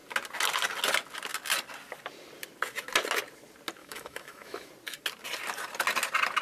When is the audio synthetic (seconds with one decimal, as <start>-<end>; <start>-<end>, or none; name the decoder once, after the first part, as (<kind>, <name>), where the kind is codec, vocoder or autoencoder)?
3.8-4.7 (autoencoder, DAC-VAE)